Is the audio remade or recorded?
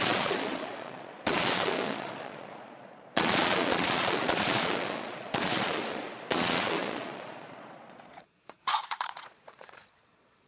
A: remade